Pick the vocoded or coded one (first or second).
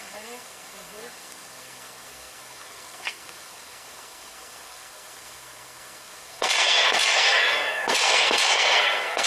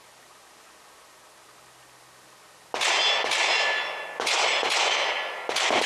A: first